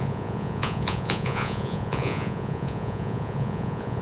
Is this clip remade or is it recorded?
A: remade